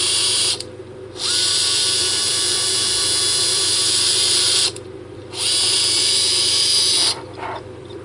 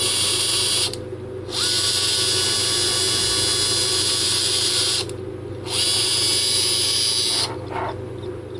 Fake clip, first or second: first